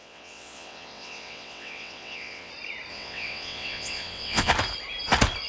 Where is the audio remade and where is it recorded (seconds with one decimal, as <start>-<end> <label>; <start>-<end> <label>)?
0.0-2.5 remade; 2.5-2.9 recorded; 2.9-4.5 remade; 4.5-5.5 recorded